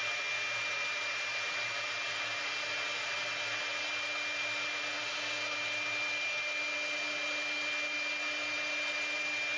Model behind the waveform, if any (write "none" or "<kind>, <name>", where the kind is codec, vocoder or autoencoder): none